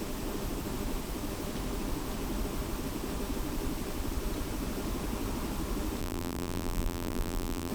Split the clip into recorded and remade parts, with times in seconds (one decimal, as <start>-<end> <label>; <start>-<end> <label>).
0.0-6.0 recorded; 6.0-7.7 remade